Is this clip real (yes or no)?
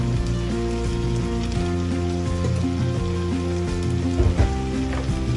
yes